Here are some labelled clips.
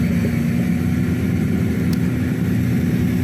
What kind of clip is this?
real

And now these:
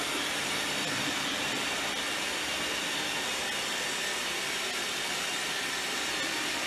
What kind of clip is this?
real